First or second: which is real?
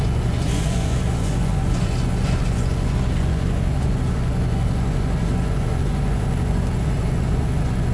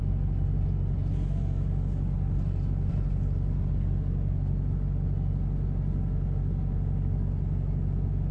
second